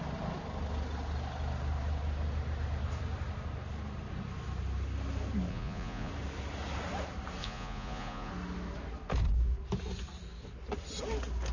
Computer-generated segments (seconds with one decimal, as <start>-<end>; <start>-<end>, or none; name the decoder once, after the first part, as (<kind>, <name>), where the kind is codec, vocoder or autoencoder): 5.5-6.1 (vocoder, Vocos); 7.4-8.3